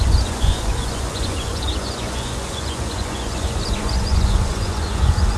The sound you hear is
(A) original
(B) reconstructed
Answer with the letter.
B